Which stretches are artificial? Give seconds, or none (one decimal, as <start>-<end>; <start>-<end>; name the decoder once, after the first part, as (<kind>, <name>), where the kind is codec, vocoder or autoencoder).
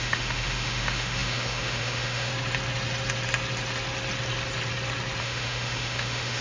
0.0-2.3 (autoencoder, DAC-VAE); 5.2-6.4